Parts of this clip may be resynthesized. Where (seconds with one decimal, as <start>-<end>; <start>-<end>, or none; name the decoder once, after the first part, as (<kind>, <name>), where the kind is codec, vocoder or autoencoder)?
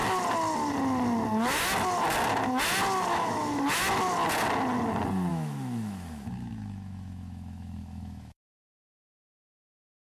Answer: 3.1-3.6 (autoencoder, DAC-VAE); 5.3-9.6